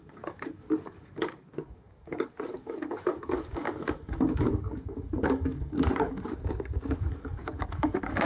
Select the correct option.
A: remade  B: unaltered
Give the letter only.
A